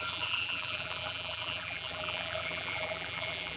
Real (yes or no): no